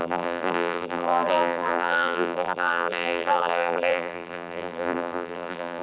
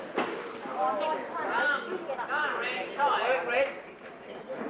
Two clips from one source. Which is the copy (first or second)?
first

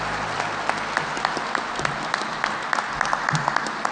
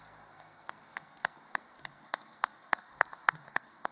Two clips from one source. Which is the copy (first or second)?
second